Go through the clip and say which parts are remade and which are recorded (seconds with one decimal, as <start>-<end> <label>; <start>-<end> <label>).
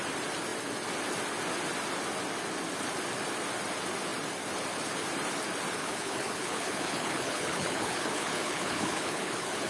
0.0-5.8 recorded; 5.8-9.7 remade